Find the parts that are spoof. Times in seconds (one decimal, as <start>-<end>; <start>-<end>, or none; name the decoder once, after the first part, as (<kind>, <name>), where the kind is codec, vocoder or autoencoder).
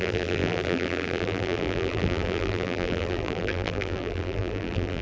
0.0-5.0 (vocoder, BigVGAN v2)